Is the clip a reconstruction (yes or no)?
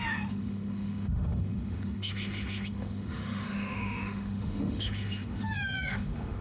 yes